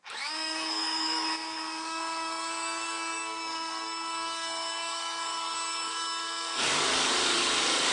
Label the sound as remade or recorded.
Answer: remade